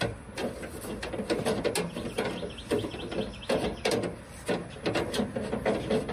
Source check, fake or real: real